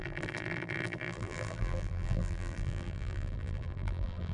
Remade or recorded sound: remade